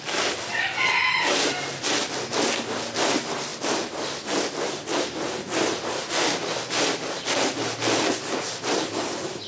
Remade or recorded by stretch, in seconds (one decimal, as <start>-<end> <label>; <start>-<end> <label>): 0.0-9.5 recorded